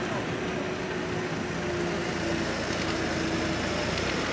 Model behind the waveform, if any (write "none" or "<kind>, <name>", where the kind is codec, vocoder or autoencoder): none